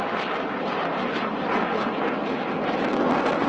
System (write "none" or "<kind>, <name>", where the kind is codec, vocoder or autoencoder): none